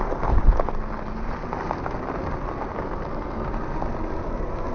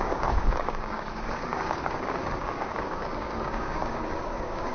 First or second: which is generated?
second